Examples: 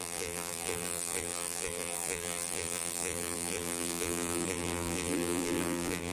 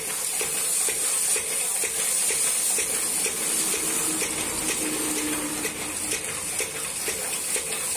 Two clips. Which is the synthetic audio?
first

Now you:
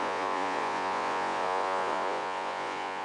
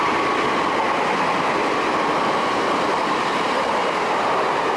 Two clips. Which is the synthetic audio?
first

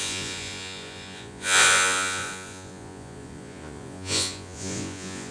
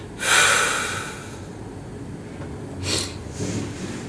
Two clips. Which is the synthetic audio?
first